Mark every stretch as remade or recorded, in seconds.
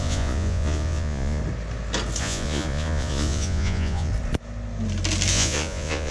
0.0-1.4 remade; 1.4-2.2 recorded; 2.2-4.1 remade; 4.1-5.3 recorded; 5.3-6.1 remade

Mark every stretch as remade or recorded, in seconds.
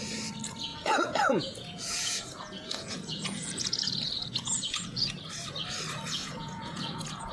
0.0-0.7 recorded; 0.7-5.1 remade; 5.1-6.2 recorded; 6.2-7.3 remade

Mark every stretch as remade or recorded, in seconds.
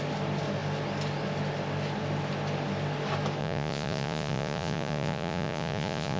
0.0-3.4 recorded; 3.4-6.2 remade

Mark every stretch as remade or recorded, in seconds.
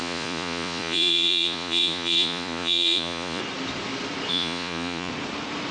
0.0-3.4 remade; 3.4-4.3 recorded; 4.3-5.1 remade; 5.1-5.7 recorded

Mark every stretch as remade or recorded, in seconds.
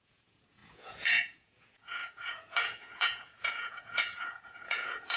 0.0-5.2 remade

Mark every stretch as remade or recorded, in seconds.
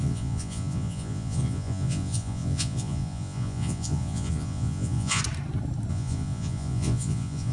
0.0-5.2 remade; 5.2-5.9 recorded; 5.9-7.5 remade